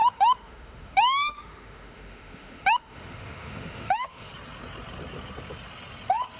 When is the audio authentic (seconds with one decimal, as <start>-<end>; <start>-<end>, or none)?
4.3-6.4